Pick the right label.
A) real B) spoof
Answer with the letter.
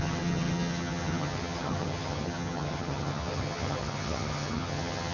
B